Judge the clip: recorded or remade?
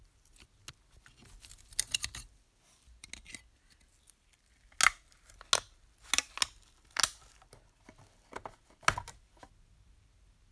recorded